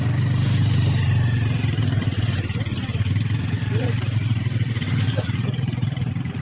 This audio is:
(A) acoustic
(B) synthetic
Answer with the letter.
B